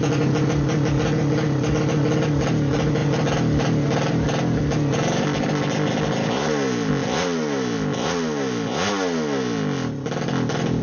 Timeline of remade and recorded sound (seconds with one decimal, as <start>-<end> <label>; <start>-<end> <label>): 0.0-10.8 recorded